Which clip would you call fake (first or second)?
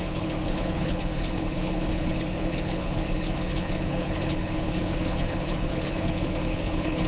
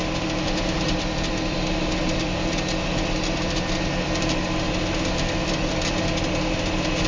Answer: first